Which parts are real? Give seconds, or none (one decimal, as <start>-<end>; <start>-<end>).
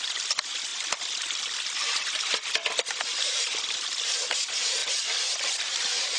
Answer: 0.0-0.7; 2.1-4.8